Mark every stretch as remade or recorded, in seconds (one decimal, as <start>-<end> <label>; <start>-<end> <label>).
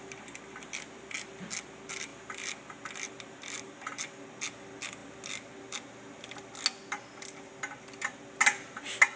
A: 0.0-9.2 recorded